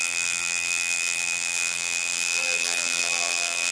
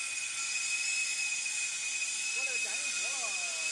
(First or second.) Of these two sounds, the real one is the second